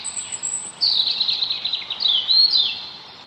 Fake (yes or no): no